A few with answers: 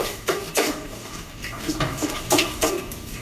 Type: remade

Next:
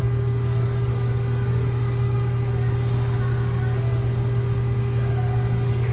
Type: remade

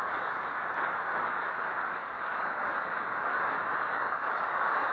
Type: remade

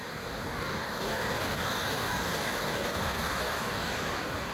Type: remade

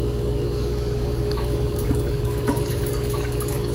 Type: remade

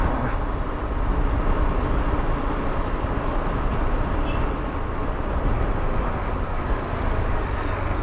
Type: recorded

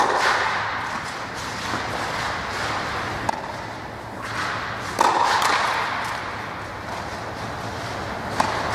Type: recorded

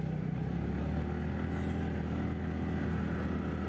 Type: recorded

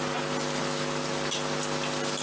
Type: recorded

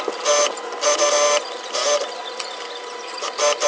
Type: recorded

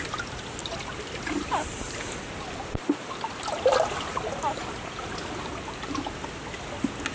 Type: recorded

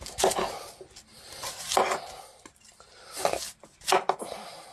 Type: recorded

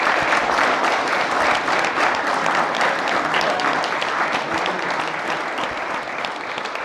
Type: recorded